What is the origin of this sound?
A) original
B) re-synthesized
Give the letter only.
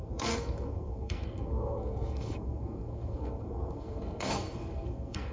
B